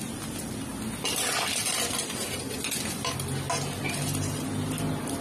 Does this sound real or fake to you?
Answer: real